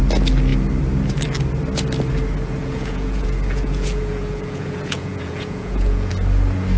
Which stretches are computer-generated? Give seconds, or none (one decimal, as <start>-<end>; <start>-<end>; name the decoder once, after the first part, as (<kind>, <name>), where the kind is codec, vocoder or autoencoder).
2.6-6.1 (vocoder, Vocos)